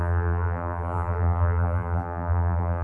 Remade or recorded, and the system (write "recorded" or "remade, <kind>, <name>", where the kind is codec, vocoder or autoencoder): remade, vocoder, BigVGAN v2